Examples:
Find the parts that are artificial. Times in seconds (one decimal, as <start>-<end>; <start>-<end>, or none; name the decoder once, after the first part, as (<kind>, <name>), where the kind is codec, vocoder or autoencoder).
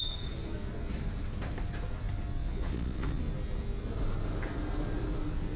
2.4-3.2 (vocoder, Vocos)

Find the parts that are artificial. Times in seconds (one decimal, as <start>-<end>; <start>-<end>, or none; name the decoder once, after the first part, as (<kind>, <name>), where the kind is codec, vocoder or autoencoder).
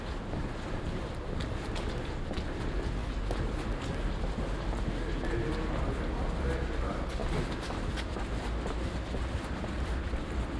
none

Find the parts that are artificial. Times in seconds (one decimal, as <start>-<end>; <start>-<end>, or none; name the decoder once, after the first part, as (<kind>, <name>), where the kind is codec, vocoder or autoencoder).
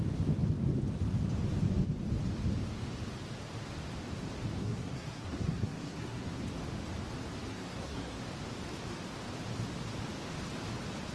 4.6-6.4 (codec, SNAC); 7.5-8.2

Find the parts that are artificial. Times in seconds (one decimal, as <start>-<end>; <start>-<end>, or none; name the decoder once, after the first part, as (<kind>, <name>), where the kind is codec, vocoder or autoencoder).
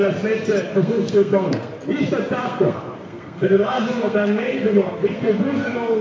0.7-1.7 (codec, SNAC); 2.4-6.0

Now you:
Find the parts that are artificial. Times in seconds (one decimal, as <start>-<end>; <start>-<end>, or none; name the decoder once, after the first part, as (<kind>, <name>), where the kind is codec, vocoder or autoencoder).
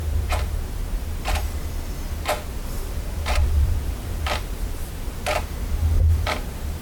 0.0-1.1 (vocoder, BigVGAN v2); 2.5-6.8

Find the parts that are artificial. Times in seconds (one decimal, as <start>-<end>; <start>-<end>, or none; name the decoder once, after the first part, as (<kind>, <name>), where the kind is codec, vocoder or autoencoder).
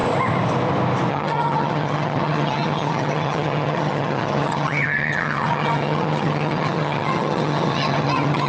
1.1-8.5 (vocoder, HiFi-GAN)